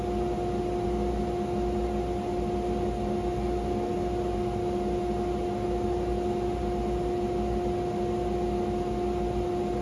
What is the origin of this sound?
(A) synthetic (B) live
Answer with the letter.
B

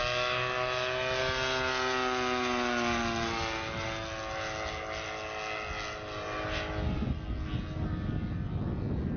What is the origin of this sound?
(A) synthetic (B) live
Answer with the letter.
B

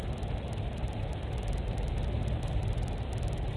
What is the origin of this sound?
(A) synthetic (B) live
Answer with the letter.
B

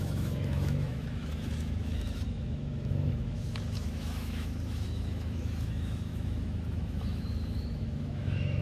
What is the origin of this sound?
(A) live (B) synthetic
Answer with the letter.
B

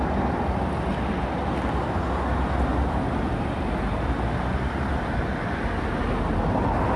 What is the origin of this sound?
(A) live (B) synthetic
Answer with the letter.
A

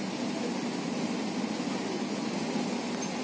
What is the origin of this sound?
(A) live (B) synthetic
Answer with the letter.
A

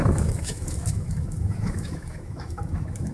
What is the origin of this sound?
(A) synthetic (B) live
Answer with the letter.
A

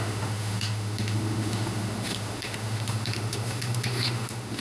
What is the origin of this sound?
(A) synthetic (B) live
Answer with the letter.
A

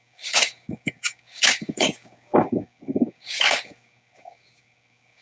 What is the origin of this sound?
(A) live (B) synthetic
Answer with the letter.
B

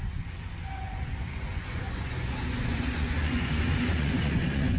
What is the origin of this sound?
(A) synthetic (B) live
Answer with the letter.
A